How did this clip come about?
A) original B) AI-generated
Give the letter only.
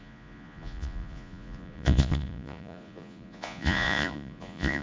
B